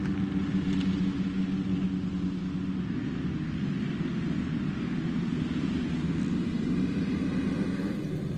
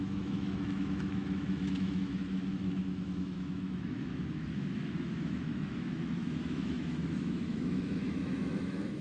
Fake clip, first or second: second